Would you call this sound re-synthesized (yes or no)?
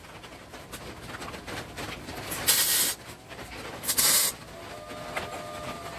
no